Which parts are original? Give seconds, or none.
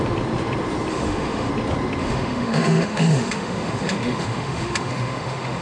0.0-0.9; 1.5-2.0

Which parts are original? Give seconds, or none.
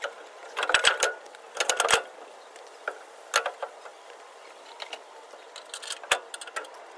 0.0-0.4; 1.5-3.9; 5.5-7.0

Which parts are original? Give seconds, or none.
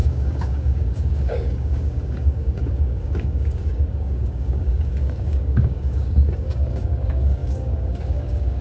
none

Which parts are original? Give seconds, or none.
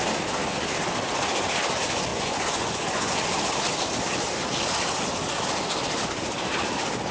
0.0-2.1; 3.1-7.1